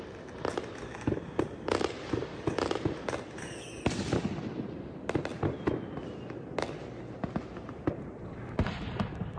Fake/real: real